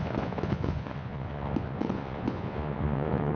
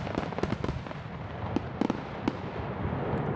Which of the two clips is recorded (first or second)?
second